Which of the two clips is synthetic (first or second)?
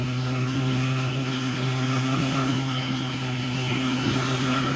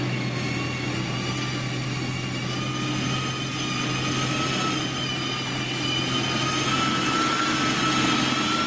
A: first